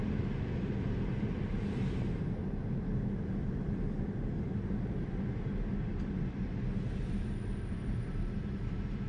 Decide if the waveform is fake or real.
real